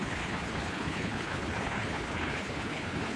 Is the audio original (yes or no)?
no